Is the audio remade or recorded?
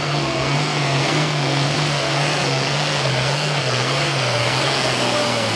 remade